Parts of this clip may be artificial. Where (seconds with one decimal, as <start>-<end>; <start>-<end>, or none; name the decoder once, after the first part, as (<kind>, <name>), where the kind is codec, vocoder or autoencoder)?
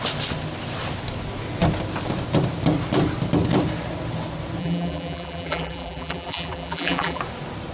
4.6-7.2 (vocoder, BigVGAN v2)